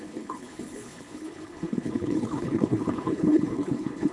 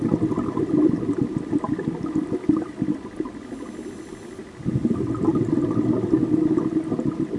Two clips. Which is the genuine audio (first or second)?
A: second